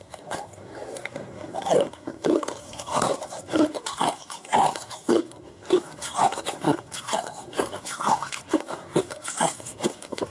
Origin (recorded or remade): remade